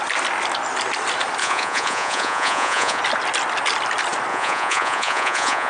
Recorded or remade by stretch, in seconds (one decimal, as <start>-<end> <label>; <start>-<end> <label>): 0.0-1.4 recorded; 1.4-3.0 remade; 3.0-4.3 recorded; 4.3-5.7 remade